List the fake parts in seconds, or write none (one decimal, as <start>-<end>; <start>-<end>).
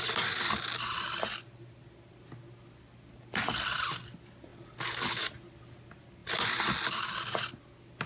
none